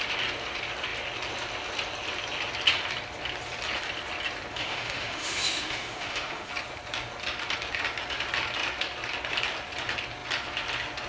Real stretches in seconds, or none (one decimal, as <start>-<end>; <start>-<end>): 0.0-4.5; 6.5-11.1